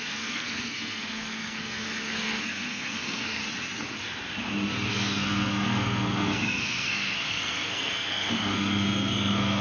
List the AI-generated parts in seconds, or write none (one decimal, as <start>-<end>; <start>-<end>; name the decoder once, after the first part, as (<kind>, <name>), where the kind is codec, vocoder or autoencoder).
0.0-3.4 (codec, SNAC); 4.9-9.6